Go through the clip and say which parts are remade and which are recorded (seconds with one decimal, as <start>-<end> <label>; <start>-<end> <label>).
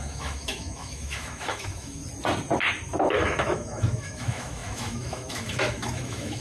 0.0-2.0 remade; 2.0-3.1 recorded; 3.1-6.4 remade